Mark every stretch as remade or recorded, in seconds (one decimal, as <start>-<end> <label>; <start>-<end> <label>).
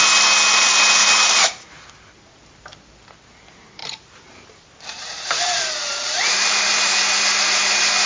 0.0-1.0 recorded; 1.0-1.9 remade; 1.9-3.8 recorded; 3.8-6.6 remade; 6.6-8.1 recorded